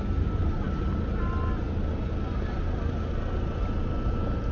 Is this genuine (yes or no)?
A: yes